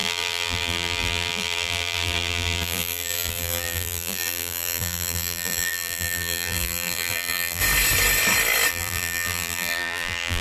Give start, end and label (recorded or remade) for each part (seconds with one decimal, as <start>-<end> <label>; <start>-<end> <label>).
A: 0.0-7.6 remade; 7.6-8.7 recorded; 8.7-10.4 remade